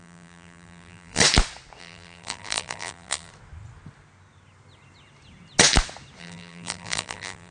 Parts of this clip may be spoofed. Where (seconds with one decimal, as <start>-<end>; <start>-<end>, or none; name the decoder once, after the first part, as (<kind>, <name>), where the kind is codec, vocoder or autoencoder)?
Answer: 0.0-1.2 (vocoder, BigVGAN v2); 1.8-3.3; 6.2-7.5